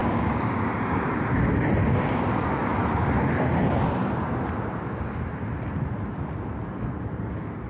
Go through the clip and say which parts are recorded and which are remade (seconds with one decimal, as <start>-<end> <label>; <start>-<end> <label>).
0.0-1.2 remade; 1.2-7.7 recorded